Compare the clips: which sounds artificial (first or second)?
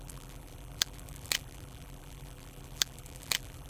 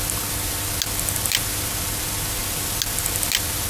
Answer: first